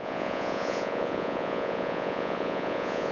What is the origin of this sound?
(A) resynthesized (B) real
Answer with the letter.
A